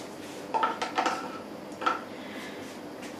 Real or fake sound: real